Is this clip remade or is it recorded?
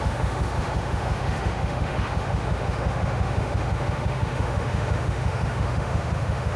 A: remade